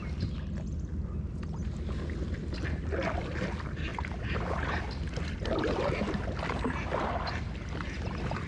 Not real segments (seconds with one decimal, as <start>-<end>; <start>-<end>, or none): none